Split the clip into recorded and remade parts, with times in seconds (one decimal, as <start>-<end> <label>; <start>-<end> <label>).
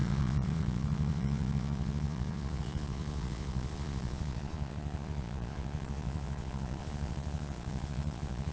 0.0-8.5 remade